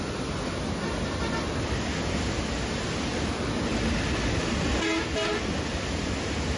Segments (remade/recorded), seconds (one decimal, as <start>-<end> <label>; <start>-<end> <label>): 0.0-6.6 recorded